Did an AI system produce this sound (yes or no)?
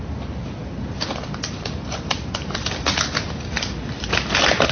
no